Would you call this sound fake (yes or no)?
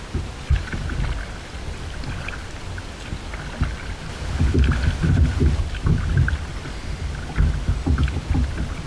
no